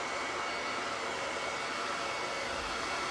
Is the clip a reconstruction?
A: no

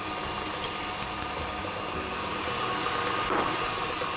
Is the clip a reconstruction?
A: no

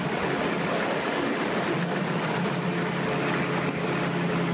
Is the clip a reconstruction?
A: no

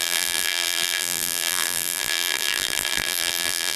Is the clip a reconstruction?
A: yes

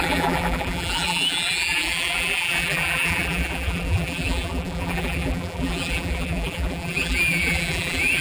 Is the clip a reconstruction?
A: yes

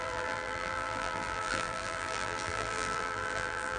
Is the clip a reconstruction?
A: yes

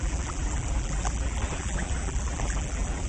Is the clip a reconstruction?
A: yes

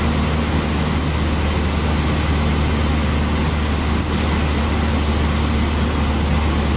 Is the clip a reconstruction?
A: no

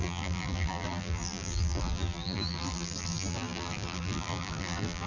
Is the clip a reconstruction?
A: yes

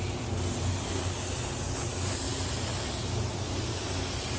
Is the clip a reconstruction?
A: no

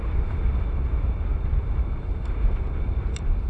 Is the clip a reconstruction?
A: yes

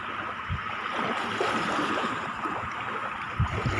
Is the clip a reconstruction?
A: yes